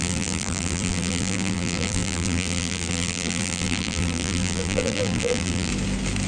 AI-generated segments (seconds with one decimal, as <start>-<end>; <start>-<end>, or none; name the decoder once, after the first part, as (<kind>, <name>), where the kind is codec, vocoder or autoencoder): 0.0-5.7 (vocoder, BigVGAN v2)